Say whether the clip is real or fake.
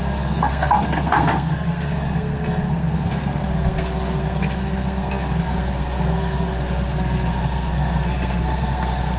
fake